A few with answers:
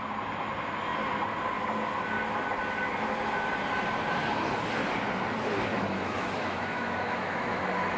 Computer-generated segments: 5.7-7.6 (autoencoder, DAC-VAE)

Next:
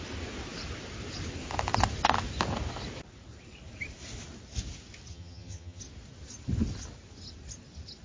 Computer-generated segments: 5.1-5.8 (vocoder, HiFi-GAN)

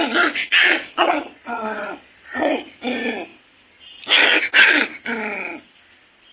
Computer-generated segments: 0.4-2.8 (vocoder, Vocos)

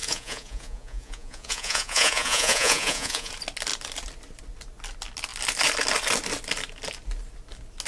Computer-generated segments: 0.0-3.3 (vocoder, Vocos)